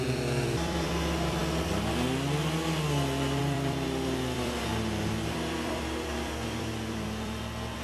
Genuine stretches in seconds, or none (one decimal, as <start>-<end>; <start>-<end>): 1.4-3.4